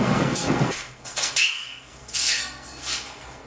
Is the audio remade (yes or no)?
yes